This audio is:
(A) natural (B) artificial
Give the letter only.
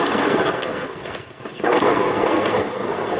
B